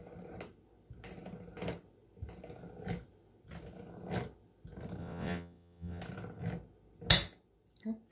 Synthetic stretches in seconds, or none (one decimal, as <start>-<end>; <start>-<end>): 5.0-6.0